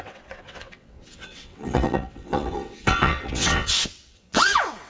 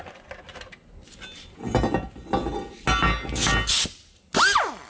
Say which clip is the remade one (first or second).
first